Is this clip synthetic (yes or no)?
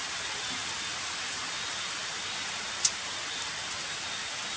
no